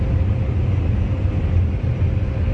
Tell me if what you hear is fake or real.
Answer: real